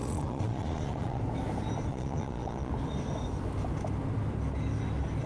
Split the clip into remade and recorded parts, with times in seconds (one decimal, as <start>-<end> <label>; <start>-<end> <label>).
0.0-1.2 remade; 1.2-1.9 recorded; 1.9-2.7 remade; 2.7-5.3 recorded